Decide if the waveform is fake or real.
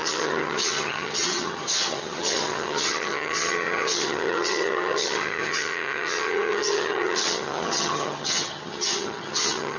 fake